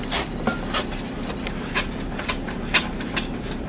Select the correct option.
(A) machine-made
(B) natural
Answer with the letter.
B